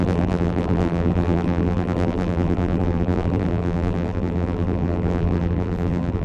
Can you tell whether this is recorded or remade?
remade